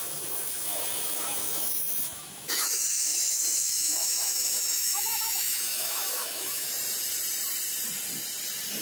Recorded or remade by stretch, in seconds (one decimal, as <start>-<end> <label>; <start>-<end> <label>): 0.0-6.7 remade; 6.7-8.8 recorded